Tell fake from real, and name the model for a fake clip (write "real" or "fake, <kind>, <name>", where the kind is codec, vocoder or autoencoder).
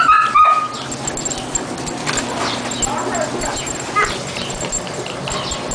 real